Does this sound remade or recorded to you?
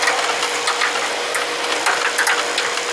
recorded